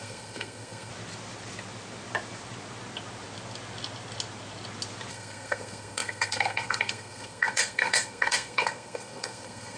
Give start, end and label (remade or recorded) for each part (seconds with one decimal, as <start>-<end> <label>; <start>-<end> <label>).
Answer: 0.0-0.9 remade; 0.9-5.1 recorded; 5.1-9.8 remade